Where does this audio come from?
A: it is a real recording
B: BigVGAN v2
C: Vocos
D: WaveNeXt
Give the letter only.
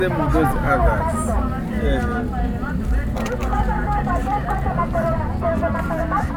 A